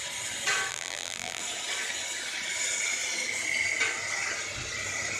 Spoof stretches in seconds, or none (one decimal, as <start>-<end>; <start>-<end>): 0.7-1.4